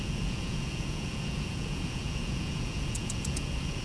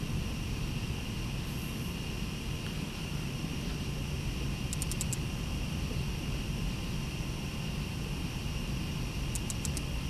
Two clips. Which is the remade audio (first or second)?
first